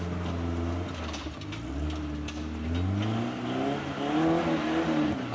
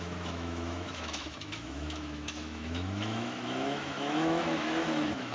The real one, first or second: first